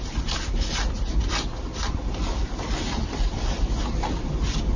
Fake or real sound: real